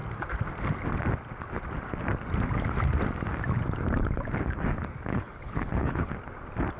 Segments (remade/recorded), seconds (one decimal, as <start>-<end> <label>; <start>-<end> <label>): 0.0-5.1 recorded; 5.1-6.1 remade; 6.1-6.8 recorded